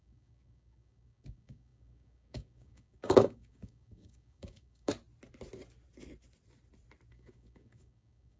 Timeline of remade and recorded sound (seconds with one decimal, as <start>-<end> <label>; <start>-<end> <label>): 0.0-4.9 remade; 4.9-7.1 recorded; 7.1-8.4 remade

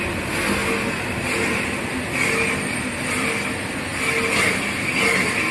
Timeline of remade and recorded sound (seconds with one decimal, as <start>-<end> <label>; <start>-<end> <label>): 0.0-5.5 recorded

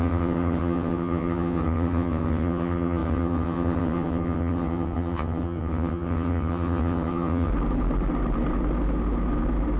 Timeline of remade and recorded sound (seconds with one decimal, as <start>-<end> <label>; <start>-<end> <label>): 0.0-7.5 remade; 7.5-9.8 recorded

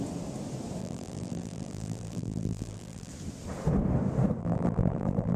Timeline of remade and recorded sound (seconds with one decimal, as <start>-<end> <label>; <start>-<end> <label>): 0.0-0.8 recorded; 0.8-3.1 remade; 3.1-4.4 recorded; 4.4-5.4 remade

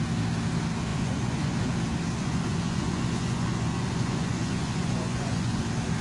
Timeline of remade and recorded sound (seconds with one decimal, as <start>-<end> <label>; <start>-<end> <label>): 0.0-0.9 recorded; 0.9-1.7 remade; 1.7-2.2 recorded; 2.2-5.6 remade; 5.6-6.0 recorded